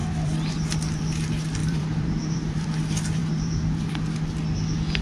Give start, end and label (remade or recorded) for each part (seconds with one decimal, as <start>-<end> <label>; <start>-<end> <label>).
0.0-0.5 remade; 0.5-1.6 recorded; 1.6-2.7 remade; 2.7-3.2 recorded; 3.2-3.9 remade; 3.9-5.0 recorded